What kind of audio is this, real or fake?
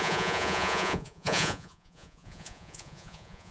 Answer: fake